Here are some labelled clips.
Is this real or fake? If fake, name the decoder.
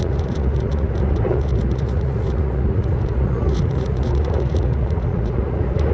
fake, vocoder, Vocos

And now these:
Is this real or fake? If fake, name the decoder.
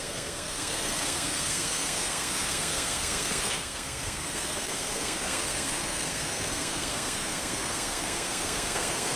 fake, codec, SNAC